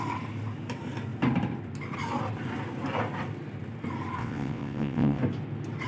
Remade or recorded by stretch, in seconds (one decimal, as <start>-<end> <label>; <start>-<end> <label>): 0.0-4.2 recorded; 4.2-5.2 remade; 5.2-5.9 recorded

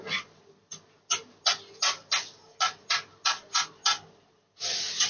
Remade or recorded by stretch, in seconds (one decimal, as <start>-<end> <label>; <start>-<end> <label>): 0.0-5.1 recorded

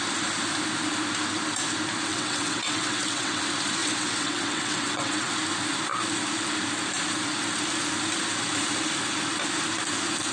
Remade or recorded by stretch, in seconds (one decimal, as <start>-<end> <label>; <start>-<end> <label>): 0.0-2.1 recorded; 2.1-3.4 remade; 3.4-3.8 recorded; 3.8-5.3 remade; 5.3-10.3 recorded